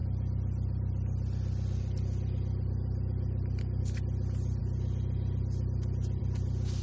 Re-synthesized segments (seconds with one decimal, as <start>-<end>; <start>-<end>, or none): none